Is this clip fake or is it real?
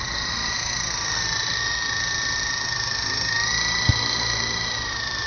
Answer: real